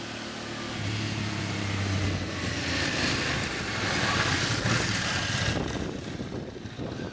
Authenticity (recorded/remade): recorded